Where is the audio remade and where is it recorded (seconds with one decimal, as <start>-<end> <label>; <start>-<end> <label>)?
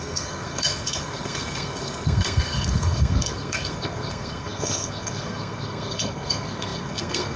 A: 0.0-7.4 remade